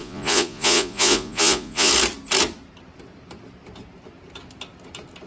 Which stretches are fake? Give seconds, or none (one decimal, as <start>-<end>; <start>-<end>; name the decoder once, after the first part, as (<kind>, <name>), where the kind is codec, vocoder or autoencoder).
0.0-1.9 (vocoder, Vocos)